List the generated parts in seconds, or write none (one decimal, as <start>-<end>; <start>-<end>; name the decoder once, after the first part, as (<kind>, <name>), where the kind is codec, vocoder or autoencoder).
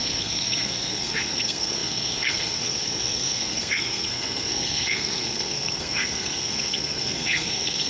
0.0-7.9 (codec, SNAC)